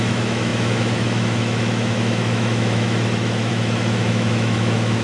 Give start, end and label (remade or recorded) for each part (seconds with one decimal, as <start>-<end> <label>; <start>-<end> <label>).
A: 0.0-5.0 remade